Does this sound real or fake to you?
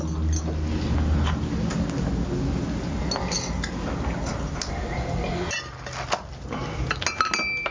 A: real